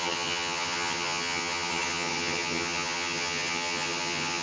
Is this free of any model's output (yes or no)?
no